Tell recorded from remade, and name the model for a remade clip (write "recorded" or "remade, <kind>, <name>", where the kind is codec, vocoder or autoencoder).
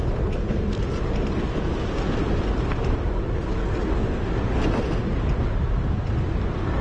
recorded